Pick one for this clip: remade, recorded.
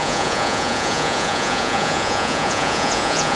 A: remade